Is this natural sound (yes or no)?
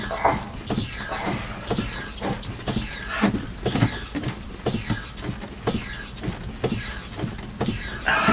yes